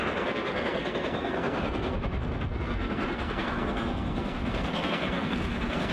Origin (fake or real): fake